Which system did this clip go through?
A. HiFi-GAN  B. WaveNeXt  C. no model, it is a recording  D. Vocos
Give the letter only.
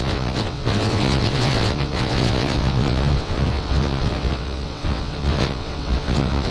B